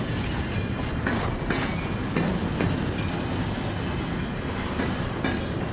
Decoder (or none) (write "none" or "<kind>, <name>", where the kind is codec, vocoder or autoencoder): none